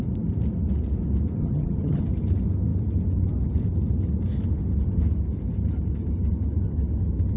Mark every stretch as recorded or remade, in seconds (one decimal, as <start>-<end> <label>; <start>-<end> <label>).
0.0-1.4 recorded; 1.4-2.0 remade; 2.0-7.4 recorded